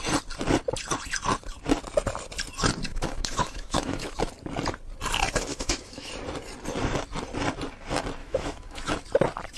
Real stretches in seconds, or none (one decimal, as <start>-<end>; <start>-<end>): 0.0-2.9; 4.2-5.5; 6.1-8.2; 8.9-9.6